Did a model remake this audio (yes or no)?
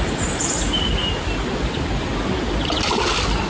no